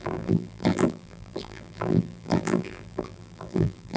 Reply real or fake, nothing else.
fake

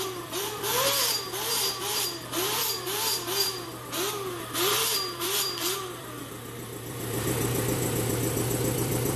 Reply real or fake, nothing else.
fake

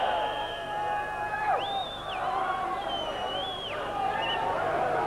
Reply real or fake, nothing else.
real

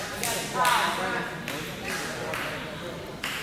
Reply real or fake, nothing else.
fake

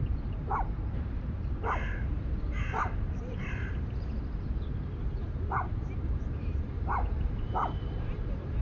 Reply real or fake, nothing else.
fake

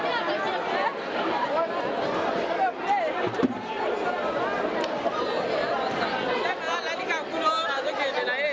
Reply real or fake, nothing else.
real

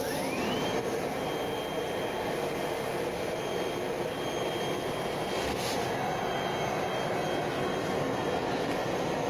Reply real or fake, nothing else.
real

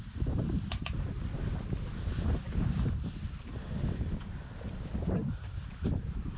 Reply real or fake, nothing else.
fake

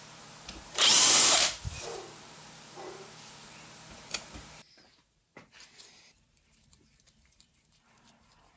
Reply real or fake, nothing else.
fake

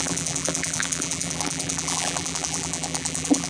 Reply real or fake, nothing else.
fake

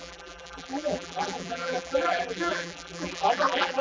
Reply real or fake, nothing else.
fake